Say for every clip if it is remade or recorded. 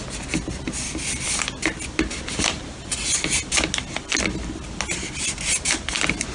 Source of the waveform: recorded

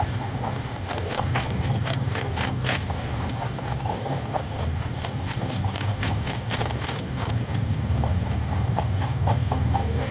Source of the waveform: remade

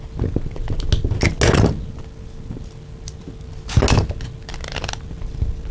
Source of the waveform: recorded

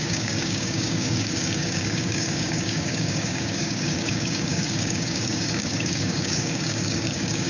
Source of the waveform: remade